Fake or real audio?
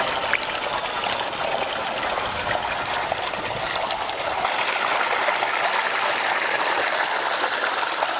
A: real